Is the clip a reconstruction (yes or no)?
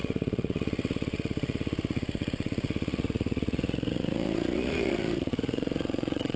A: yes